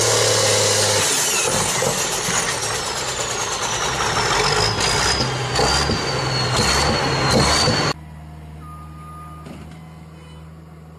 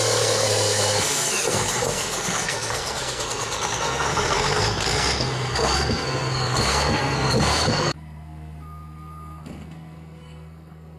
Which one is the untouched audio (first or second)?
first